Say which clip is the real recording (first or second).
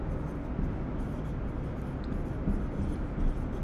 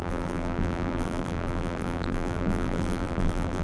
first